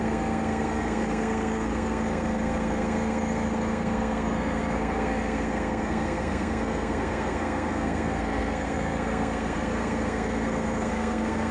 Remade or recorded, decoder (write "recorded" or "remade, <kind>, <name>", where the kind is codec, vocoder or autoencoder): remade, codec, SNAC